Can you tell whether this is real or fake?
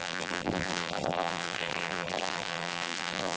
fake